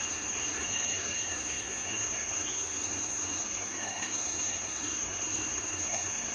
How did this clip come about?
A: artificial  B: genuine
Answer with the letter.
A